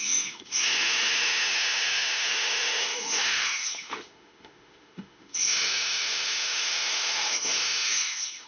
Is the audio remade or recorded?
remade